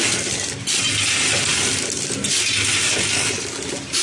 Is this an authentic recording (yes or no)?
yes